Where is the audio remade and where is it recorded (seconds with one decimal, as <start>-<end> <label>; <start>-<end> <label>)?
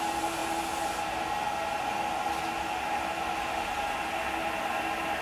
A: 0.0-5.2 recorded